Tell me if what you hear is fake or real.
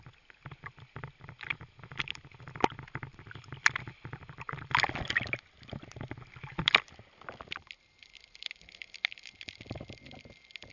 real